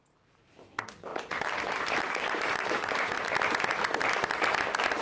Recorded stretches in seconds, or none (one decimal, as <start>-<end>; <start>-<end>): 0.0-1.1; 3.3-5.0